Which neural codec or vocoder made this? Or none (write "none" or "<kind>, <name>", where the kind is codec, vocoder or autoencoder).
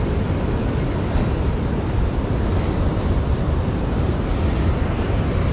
none